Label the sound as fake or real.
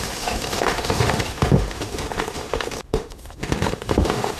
fake